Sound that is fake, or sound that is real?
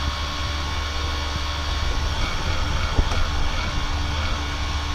real